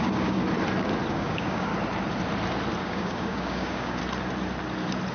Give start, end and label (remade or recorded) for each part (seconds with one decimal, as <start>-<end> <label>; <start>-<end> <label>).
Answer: 0.0-0.4 remade; 0.4-1.1 recorded; 1.1-1.7 remade; 1.7-2.8 recorded; 2.8-4.0 remade; 4.0-5.1 recorded